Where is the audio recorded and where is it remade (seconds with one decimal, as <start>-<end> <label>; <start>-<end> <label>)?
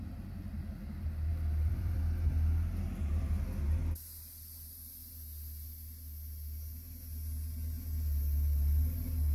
0.0-1.3 recorded; 1.3-2.0 remade; 2.0-9.3 recorded